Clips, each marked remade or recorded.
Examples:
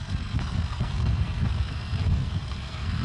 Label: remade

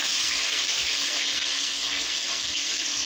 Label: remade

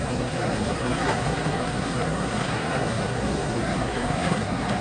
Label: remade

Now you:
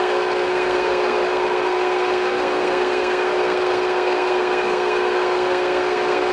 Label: remade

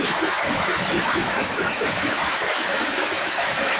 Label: remade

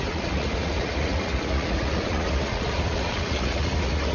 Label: remade